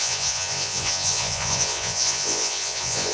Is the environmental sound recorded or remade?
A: remade